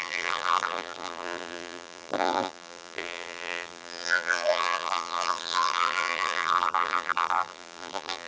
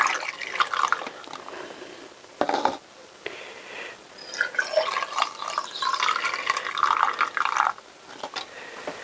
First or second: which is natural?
second